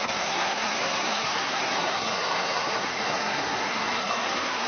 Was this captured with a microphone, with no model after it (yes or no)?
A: no